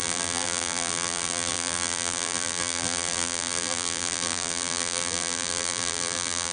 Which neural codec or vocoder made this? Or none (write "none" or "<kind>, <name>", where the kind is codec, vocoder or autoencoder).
vocoder, BigVGAN v2